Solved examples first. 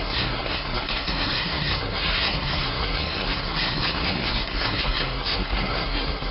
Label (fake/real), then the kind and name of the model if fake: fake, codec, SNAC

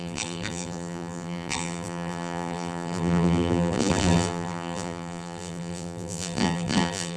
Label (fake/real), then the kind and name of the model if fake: fake, vocoder, BigVGAN v2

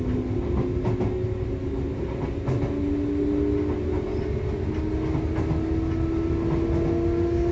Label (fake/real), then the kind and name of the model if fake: real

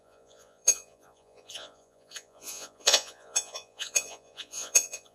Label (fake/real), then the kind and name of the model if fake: fake, vocoder, Vocos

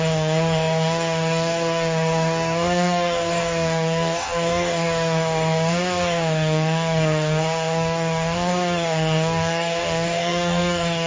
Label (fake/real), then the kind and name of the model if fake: fake, codec, DAC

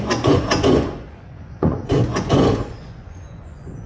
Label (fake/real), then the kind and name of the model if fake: fake, vocoder, Vocos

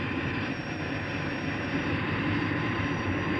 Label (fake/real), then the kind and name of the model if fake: fake, vocoder, BigVGAN v2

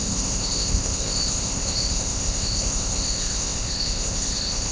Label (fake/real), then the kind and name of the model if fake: fake, codec, ZipCodec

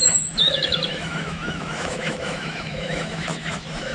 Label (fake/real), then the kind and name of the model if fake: fake, autoencoder, DAC-VAE